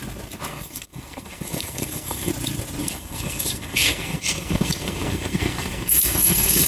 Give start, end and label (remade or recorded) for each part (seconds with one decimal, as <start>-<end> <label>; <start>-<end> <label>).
0.0-0.5 recorded; 0.5-2.3 remade; 2.3-2.8 recorded; 2.8-6.7 remade